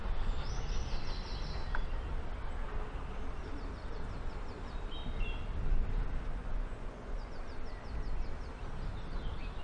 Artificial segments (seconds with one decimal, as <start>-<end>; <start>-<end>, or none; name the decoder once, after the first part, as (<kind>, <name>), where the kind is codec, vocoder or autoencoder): 6.4-7.4 (vocoder, Vocos)